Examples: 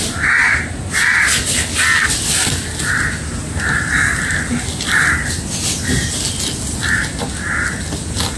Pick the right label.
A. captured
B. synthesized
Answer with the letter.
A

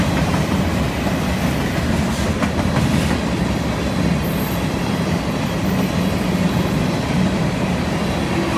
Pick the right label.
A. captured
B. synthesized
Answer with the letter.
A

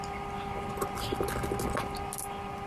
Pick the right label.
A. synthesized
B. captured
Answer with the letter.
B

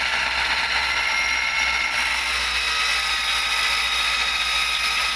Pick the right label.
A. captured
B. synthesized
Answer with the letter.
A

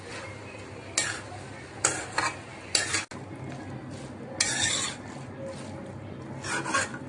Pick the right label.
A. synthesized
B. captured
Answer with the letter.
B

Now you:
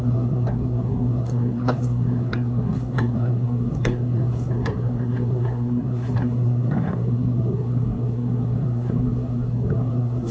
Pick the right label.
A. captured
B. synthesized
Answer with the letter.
B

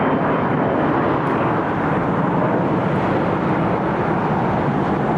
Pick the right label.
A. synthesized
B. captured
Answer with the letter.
B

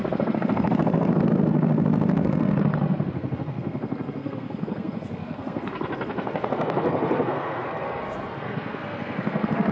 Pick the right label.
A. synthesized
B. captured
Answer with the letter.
A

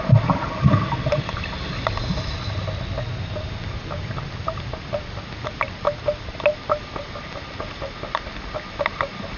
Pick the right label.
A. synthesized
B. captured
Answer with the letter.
B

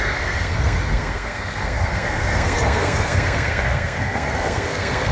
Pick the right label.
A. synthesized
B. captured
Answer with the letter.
A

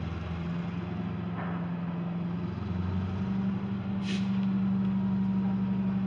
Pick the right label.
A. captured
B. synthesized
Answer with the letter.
A